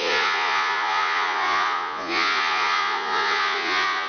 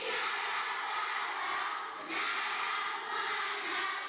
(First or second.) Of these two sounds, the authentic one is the second